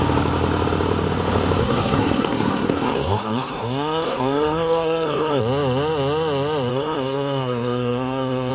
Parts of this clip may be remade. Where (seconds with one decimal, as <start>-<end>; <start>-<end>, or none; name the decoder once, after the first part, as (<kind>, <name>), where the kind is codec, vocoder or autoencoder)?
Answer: 1.6-5.4 (codec, SNAC); 6.7-8.5